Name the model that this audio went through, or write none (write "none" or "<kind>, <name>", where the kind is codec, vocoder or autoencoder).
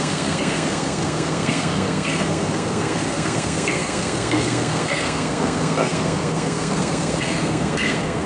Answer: codec, SNAC